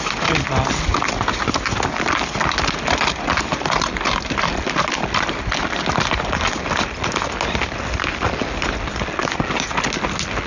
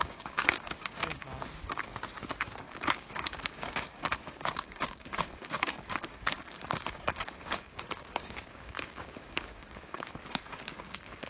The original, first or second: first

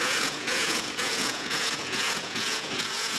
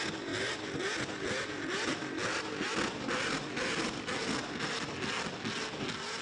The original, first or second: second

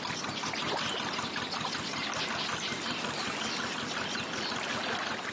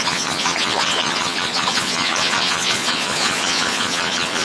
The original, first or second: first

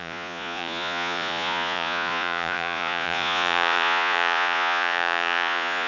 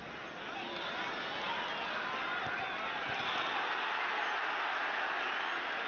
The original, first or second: second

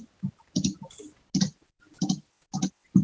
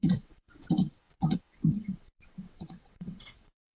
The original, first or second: first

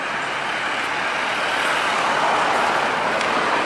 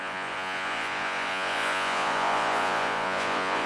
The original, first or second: first